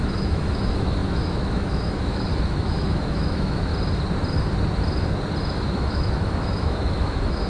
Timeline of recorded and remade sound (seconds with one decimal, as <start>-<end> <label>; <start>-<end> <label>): 0.0-3.7 remade; 3.7-5.7 recorded; 5.7-7.5 remade